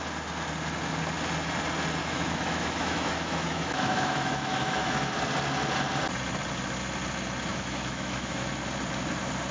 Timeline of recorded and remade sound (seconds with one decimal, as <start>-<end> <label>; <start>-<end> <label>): 0.0-2.0 recorded; 2.0-5.1 remade; 5.1-7.5 recorded; 7.5-8.5 remade; 8.5-9.5 recorded